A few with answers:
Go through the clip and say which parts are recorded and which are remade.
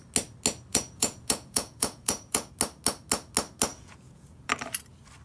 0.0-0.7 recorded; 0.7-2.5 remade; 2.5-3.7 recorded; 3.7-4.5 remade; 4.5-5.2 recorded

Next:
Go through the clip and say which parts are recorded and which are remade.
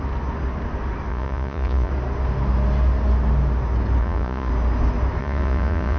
0.0-1.1 recorded; 1.1-1.9 remade; 1.9-4.0 recorded; 4.0-4.5 remade; 4.5-5.2 recorded; 5.2-6.0 remade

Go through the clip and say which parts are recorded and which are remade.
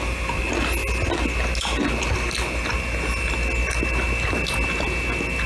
0.0-5.5 recorded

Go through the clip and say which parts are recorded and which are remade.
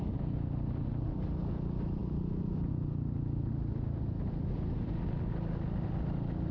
0.0-6.5 recorded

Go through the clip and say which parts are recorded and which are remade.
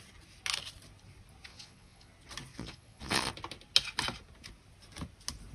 0.0-1.5 recorded; 1.5-2.1 remade; 2.1-2.5 recorded; 2.5-3.3 remade; 3.3-5.5 recorded